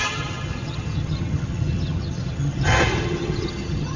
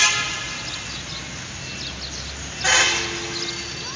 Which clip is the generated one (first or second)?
first